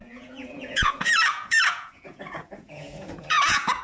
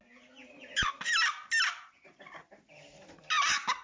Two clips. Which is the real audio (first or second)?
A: second